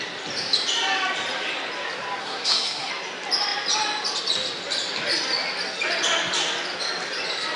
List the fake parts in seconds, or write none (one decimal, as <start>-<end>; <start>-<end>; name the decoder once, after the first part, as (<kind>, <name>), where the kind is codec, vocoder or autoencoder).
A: 2.2-2.9 (codec, SNAC)